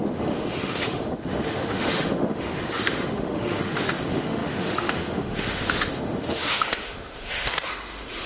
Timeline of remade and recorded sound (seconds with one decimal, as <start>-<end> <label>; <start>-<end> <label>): 0.0-8.3 remade